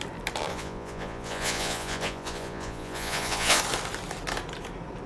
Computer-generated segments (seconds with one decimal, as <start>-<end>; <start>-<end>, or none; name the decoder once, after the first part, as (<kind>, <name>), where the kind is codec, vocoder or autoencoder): 0.5-3.6 (vocoder, Vocos)

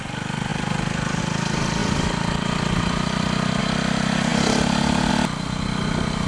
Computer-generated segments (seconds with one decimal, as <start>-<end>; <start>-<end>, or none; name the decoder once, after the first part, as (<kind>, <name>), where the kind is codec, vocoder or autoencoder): 0.5-1.2 (vocoder, BigVGAN v2); 1.8-3.6

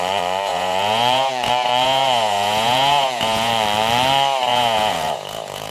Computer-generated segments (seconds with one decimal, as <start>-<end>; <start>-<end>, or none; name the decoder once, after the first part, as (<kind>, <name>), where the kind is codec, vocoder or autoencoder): 0.5-3.5 (vocoder, Vocos); 4.5-5.7